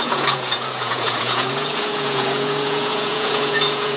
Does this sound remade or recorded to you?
remade